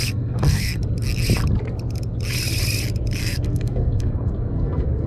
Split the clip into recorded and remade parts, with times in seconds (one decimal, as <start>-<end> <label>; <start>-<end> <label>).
0.0-0.8 remade; 0.8-3.2 recorded; 3.2-5.1 remade